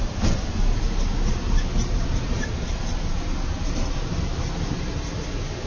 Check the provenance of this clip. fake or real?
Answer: real